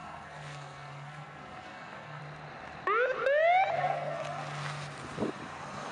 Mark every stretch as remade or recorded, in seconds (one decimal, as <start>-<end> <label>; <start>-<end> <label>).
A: 0.0-2.2 remade; 2.2-3.8 recorded; 3.8-4.4 remade; 4.4-5.9 recorded